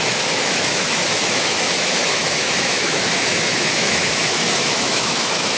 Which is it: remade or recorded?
remade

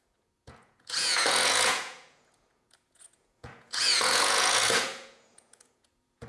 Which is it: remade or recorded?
remade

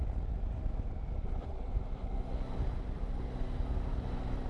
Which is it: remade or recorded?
recorded